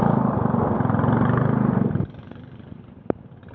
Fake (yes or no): no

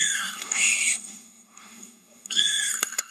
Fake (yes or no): yes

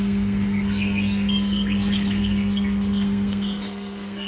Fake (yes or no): yes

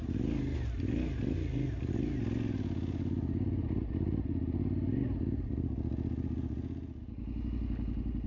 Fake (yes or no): no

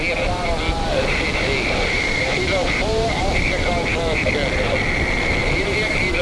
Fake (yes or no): no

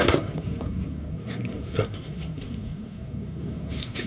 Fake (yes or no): yes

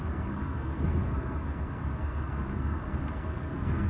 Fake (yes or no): yes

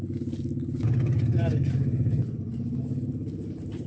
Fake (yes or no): no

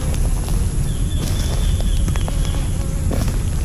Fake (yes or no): no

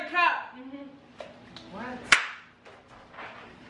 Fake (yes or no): no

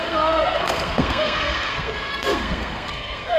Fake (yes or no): yes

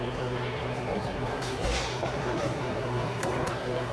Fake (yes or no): yes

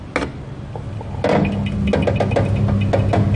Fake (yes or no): no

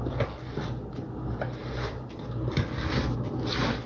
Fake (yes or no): no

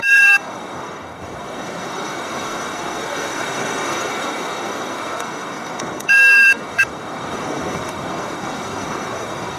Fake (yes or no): yes